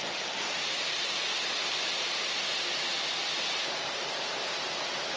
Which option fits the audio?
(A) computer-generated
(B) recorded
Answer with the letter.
B